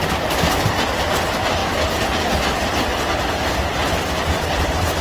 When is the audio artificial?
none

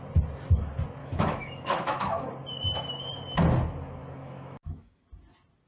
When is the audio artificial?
1.0-2.3 (autoencoder, DAC-VAE); 4.0-4.9

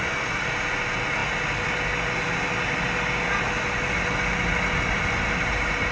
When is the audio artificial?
none

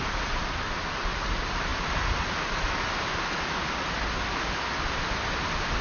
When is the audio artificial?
none